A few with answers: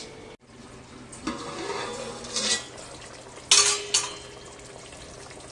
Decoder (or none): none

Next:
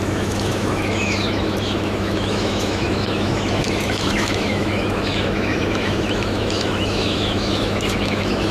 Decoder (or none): autoencoder, DAC-VAE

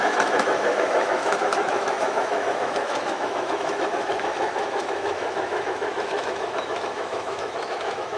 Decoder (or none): autoencoder, DAC-VAE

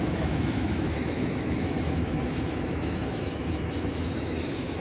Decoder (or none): autoencoder, DAC-VAE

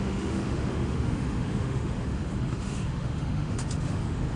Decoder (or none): autoencoder, DAC-VAE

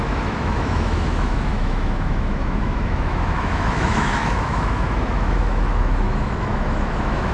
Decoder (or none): autoencoder, DAC-VAE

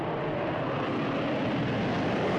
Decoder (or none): none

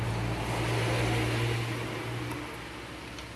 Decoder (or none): none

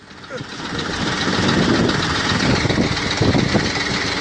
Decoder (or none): none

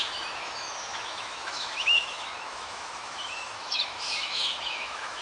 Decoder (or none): autoencoder, DAC-VAE